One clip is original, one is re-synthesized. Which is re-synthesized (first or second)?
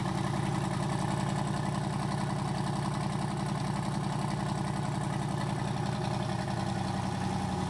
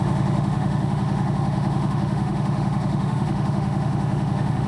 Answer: second